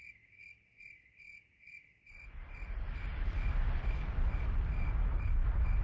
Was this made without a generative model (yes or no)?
yes